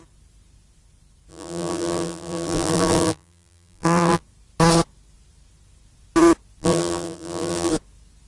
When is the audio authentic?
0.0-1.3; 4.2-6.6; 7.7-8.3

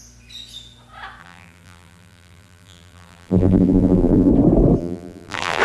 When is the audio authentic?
0.0-1.2; 4.3-4.8

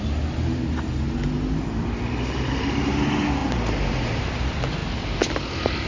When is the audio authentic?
0.0-5.9

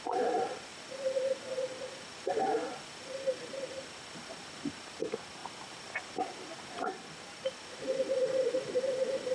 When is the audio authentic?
0.0-0.7; 2.2-5.4; 8.1-9.3